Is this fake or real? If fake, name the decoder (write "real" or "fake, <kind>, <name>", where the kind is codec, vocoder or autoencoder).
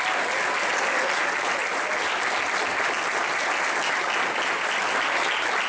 real